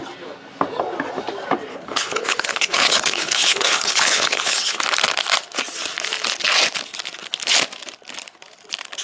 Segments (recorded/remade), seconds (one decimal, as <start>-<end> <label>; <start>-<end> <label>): 0.0-1.7 recorded; 1.7-4.8 remade; 4.8-9.0 recorded